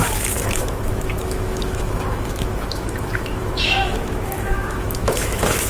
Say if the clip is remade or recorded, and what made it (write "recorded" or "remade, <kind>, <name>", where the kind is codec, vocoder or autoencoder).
remade, autoencoder, DAC-VAE